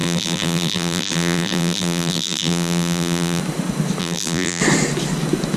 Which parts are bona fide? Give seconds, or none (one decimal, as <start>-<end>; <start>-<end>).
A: 3.4-4.0; 4.6-5.6